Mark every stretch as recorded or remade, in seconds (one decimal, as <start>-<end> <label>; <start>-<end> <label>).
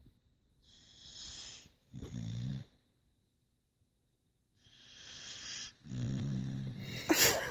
0.0-7.5 recorded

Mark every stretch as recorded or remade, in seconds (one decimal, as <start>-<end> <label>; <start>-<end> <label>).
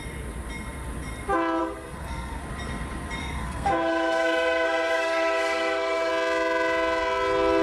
0.0-1.6 recorded; 1.6-2.4 remade; 2.4-3.2 recorded; 3.2-6.1 remade; 6.1-7.6 recorded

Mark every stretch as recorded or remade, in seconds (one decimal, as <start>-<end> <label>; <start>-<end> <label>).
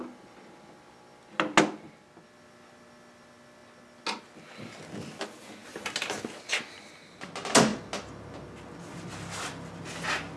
0.0-10.4 recorded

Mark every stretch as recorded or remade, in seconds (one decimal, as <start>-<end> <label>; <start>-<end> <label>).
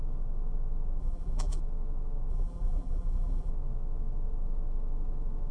0.0-1.0 recorded; 1.0-1.6 remade; 1.6-2.3 recorded; 2.3-3.5 remade; 3.5-5.5 recorded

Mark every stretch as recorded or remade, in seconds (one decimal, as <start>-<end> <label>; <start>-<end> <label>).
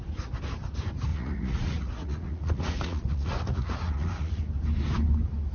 0.0-1.1 recorded; 1.1-4.4 remade; 4.4-5.5 recorded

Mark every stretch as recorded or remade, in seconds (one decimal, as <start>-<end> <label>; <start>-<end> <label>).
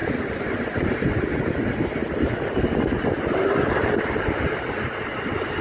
0.0-5.6 recorded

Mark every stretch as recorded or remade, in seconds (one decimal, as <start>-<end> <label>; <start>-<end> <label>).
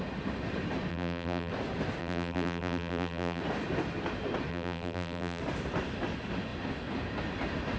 0.0-0.9 recorded; 0.9-1.5 remade; 1.5-2.0 recorded; 2.0-3.4 remade; 3.4-4.5 recorded; 4.5-5.4 remade; 5.4-7.8 recorded